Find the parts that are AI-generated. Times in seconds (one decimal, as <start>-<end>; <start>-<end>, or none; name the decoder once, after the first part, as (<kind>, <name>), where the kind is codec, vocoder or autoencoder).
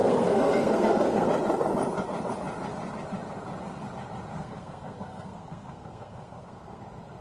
0.0-1.3 (codec, SNAC); 4.4-6.8